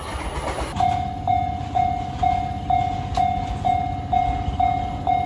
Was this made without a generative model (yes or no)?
yes